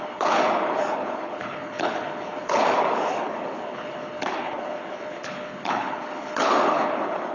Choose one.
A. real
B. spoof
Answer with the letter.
B